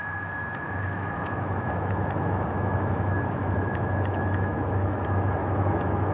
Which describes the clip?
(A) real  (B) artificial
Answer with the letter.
B